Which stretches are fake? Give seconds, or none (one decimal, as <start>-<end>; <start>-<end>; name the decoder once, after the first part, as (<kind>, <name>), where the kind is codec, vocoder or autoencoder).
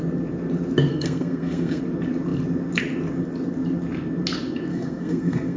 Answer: 0.9-1.8 (codec, SNAC); 4.7-5.6